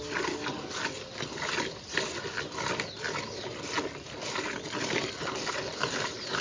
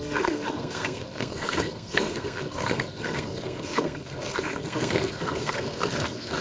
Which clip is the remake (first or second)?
second